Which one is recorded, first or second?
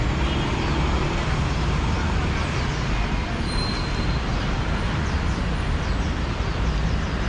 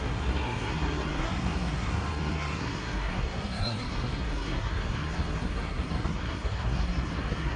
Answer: first